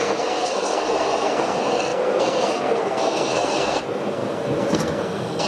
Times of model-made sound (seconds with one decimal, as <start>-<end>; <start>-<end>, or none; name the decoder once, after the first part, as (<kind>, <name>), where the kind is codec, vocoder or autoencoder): 0.0-5.5 (codec, SNAC)